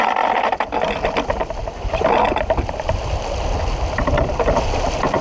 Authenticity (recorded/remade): recorded